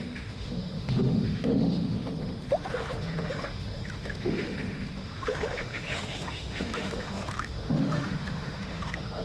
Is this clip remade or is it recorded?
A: remade